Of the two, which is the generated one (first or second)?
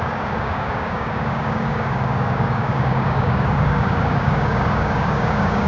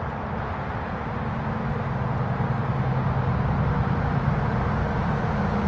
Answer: first